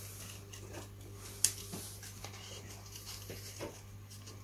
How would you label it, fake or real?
real